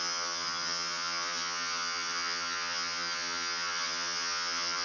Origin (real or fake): fake